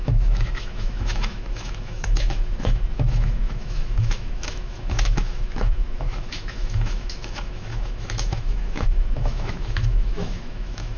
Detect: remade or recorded remade